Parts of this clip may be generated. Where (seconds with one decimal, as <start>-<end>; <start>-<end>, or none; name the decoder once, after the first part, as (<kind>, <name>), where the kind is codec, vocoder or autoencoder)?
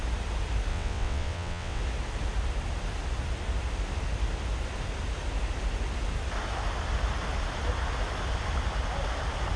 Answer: 0.7-1.8 (vocoder, WaveNeXt)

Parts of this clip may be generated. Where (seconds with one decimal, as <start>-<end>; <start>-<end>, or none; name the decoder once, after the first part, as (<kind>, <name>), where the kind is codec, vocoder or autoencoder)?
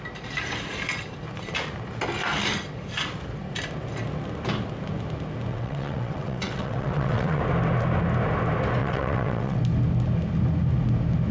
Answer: 5.5-7.4 (vocoder, WaveNeXt); 8.8-9.6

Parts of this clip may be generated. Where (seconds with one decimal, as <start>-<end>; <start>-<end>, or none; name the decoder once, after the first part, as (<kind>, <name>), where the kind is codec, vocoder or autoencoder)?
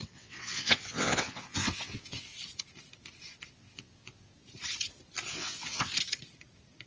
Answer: 0.0-2.3 (vocoder, WaveNeXt); 3.5-4.3; 5.3-5.9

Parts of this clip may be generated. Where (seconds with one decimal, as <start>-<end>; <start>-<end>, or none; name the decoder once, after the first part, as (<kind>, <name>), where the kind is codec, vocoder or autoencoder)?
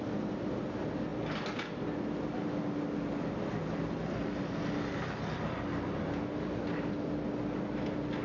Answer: none